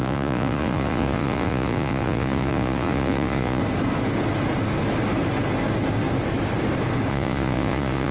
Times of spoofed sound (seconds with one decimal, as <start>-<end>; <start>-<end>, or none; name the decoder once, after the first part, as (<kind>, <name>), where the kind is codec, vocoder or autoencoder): 0.0-3.6 (vocoder, Vocos); 7.1-8.1